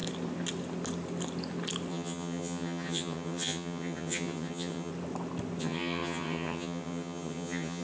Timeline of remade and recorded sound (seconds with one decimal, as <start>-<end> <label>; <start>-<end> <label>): 0.0-1.9 recorded; 1.9-4.9 remade; 4.9-5.6 recorded; 5.6-7.8 remade